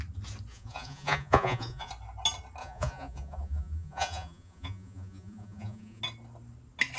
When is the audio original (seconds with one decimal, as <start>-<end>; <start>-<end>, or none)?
0.0-0.5; 1.9-2.6; 6.0-7.0